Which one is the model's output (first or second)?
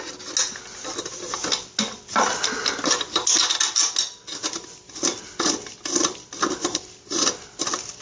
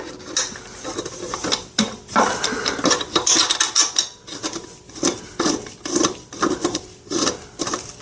second